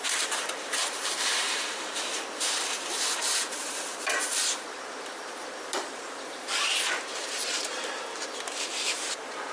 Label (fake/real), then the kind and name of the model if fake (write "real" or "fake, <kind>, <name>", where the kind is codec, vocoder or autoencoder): fake, vocoder, BigVGAN v2